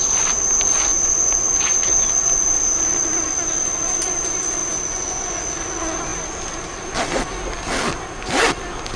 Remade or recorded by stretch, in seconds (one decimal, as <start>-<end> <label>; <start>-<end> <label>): 0.0-0.9 recorded; 0.9-2.0 remade; 2.0-4.6 recorded; 4.6-5.4 remade; 5.4-9.0 recorded